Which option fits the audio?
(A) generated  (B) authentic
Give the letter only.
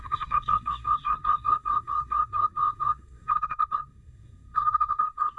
A